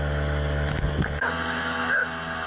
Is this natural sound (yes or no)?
yes